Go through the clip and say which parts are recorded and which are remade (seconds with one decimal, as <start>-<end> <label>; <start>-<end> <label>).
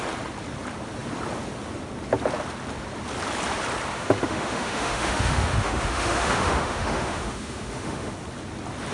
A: 0.0-3.9 recorded; 3.9-8.1 remade; 8.1-8.9 recorded